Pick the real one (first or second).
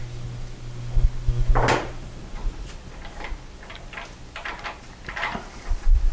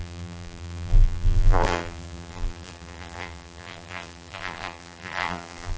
first